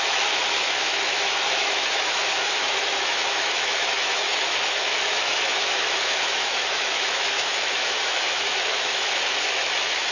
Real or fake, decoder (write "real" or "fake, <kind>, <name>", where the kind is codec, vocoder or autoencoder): fake, autoencoder, DAC-VAE